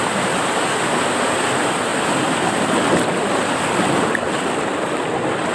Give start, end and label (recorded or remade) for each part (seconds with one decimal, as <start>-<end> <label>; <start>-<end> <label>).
0.0-5.5 recorded